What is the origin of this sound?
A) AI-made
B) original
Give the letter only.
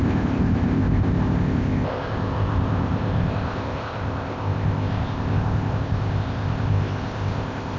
A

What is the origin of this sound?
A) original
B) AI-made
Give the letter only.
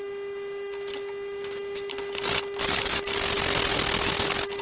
A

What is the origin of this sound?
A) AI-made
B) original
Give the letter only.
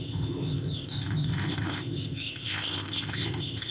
A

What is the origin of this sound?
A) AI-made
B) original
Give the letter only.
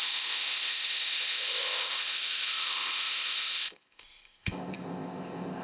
A